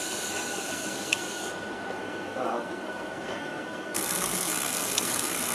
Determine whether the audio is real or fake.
fake